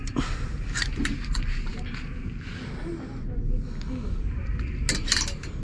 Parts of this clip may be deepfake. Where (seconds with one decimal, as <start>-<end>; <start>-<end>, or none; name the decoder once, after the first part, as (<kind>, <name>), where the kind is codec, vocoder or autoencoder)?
none